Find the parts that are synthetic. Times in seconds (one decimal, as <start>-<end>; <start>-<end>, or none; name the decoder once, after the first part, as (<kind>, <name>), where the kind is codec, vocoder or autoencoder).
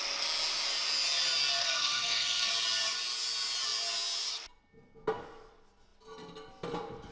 1.6-2.5 (codec, SNAC)